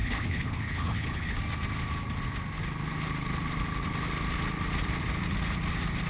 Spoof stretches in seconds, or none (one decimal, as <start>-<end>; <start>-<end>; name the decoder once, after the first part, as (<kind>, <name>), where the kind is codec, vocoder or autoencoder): 0.0-1.4 (codec, HILCodec)